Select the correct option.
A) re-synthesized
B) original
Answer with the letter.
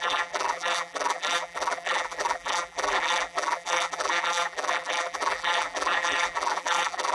A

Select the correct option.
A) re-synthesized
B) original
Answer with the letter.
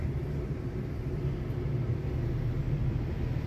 B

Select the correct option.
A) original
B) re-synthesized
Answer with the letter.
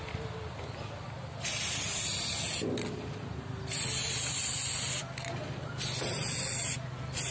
A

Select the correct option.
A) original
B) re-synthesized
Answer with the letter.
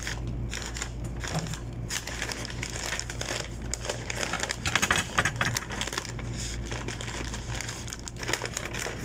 A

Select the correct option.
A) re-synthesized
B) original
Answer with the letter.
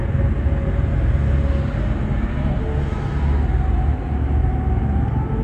B